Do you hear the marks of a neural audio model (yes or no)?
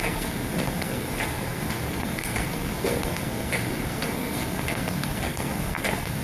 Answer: yes